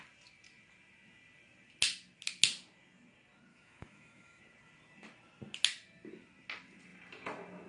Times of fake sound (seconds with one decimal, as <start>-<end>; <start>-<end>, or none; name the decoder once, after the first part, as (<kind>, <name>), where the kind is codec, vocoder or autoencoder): 3.5-4.4 (autoencoder, DAC-VAE)